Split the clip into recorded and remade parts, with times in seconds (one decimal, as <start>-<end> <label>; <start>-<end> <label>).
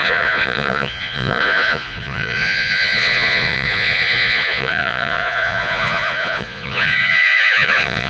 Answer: 0.0-8.1 remade